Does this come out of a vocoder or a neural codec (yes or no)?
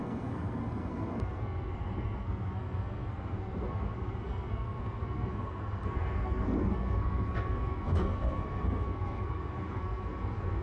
yes